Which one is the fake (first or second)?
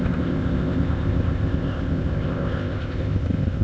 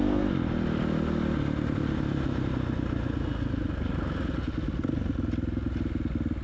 first